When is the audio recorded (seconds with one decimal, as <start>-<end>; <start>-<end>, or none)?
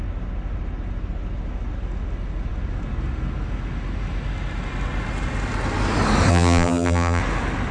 0.0-6.3; 7.2-7.7